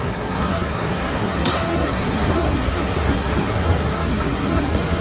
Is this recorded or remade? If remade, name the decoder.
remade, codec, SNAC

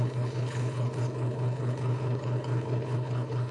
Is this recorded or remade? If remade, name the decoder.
remade, codec, HILCodec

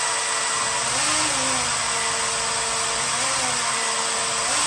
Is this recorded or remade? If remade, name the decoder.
recorded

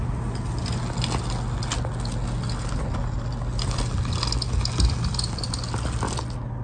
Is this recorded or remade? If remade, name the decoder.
recorded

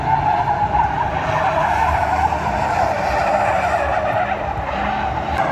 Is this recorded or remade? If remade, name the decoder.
recorded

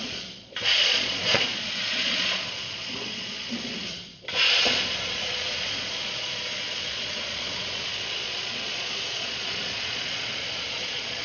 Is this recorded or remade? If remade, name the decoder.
remade, vocoder, Vocos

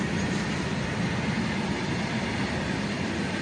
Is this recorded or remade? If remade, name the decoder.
recorded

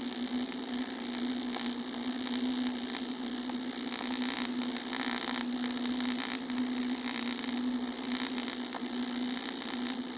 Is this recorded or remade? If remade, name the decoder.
recorded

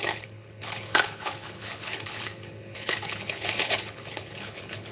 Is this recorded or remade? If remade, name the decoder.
remade, codec, HILCodec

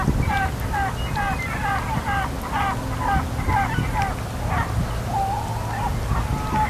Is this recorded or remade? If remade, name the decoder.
recorded